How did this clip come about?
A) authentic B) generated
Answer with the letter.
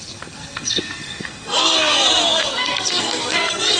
B